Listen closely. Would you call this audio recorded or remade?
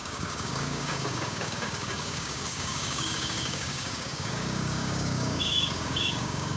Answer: remade